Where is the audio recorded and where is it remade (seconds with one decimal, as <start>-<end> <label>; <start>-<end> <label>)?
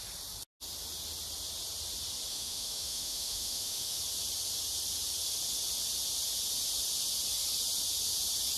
0.0-2.3 recorded; 2.3-4.0 remade; 4.0-8.6 recorded